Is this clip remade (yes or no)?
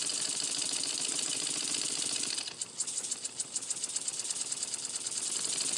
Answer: yes